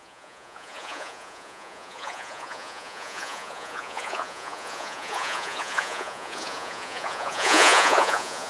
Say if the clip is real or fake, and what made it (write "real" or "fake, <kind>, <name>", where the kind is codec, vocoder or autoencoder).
fake, vocoder, Vocos